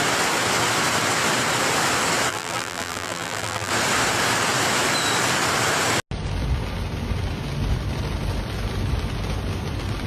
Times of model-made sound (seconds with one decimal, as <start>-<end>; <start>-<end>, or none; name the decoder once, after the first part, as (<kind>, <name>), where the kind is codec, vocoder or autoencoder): 2.3-3.7 (vocoder, BigVGAN v2)